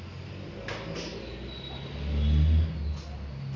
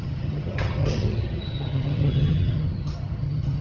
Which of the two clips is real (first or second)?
first